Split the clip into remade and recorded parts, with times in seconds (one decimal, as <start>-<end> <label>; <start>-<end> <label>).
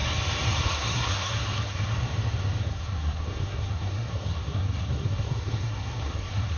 0.0-0.6 recorded; 0.6-1.9 remade; 1.9-2.6 recorded; 2.6-6.6 remade